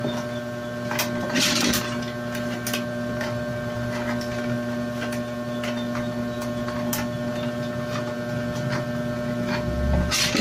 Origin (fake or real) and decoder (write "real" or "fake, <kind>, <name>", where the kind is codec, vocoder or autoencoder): real